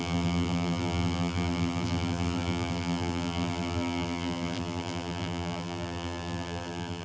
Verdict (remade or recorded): remade